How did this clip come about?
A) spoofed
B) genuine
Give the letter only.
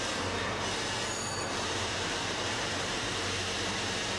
A